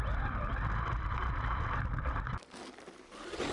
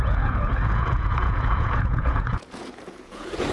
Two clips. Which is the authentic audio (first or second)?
first